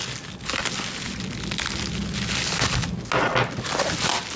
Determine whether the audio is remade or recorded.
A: recorded